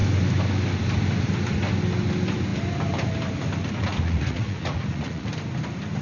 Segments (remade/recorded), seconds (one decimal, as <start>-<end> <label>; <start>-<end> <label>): 0.0-3.8 recorded; 3.8-5.3 remade; 5.3-6.0 recorded